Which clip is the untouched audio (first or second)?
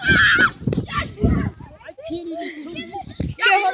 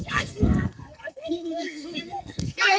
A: first